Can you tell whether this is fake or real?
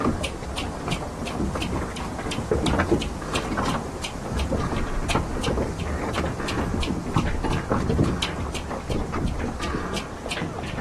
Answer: real